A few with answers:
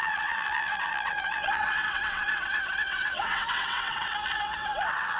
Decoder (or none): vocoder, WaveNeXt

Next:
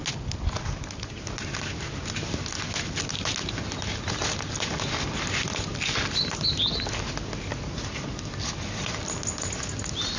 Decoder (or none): none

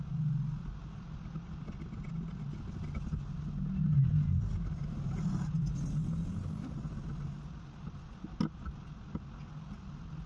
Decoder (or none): none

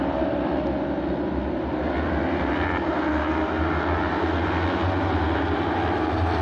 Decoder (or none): none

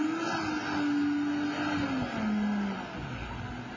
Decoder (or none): none